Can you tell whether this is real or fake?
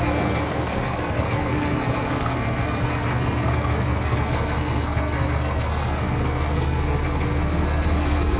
fake